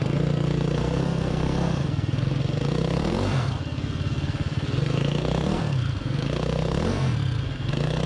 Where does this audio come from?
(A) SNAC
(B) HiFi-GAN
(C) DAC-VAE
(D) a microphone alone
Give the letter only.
A